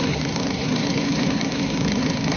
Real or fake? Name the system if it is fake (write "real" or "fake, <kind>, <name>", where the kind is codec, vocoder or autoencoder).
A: fake, codec, SNAC